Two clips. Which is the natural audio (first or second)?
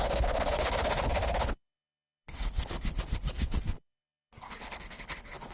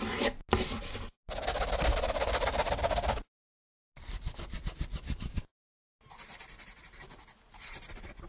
second